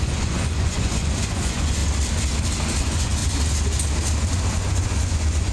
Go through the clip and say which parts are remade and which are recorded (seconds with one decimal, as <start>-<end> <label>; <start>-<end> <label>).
0.0-1.8 remade; 1.8-2.8 recorded; 2.8-3.2 remade; 3.2-4.5 recorded; 4.5-5.5 remade

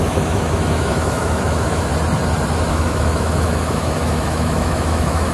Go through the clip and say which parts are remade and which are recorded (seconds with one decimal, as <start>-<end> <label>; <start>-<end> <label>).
0.0-1.9 remade; 1.9-2.7 recorded; 2.7-5.3 remade

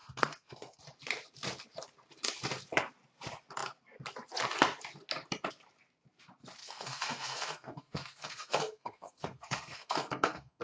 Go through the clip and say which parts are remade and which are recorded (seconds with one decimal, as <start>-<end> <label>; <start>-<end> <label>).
0.0-0.8 remade; 0.8-6.6 recorded; 6.6-10.6 remade

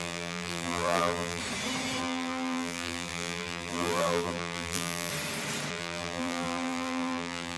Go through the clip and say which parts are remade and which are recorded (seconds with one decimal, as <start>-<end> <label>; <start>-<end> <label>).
0.0-1.4 remade; 1.4-2.0 recorded; 2.0-5.1 remade; 5.1-5.7 recorded; 5.7-7.6 remade

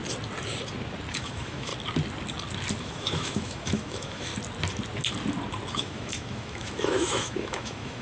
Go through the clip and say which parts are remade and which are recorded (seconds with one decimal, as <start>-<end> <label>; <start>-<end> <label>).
0.0-1.1 recorded; 1.1-1.7 remade; 1.7-2.8 recorded; 2.8-4.3 remade; 4.3-5.7 recorded; 5.7-8.0 remade

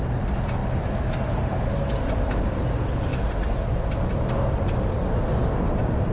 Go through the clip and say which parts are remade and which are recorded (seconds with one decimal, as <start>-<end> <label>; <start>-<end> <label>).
0.0-6.1 recorded

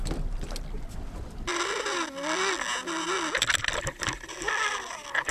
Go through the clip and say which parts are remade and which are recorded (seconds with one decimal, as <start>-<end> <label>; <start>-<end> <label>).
0.0-5.3 recorded